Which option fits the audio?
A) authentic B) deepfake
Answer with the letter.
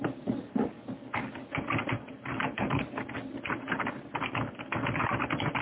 A